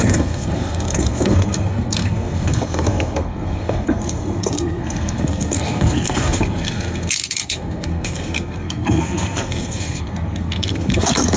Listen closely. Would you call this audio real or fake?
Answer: fake